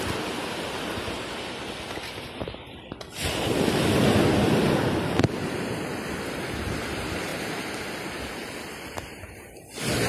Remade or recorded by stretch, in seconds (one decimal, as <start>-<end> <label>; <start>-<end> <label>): 0.0-10.1 recorded

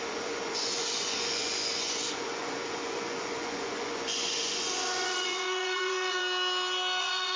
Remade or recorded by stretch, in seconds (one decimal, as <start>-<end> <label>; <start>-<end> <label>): 0.0-6.2 remade; 6.2-7.0 recorded; 7.0-7.4 remade

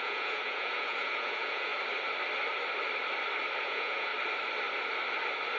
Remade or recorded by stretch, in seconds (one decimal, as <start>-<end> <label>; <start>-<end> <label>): 0.0-1.7 remade; 1.7-3.6 recorded; 3.6-4.1 remade; 4.1-5.6 recorded